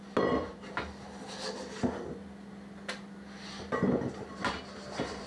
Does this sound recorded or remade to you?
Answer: recorded